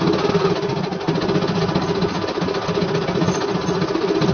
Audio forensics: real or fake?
real